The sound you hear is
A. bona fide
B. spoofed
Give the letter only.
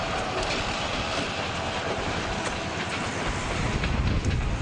A